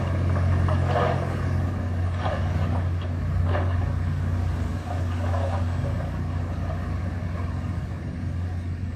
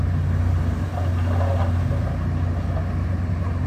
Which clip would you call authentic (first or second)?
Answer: second